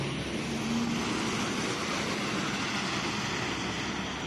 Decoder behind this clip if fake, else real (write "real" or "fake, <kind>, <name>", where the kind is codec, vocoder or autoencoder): real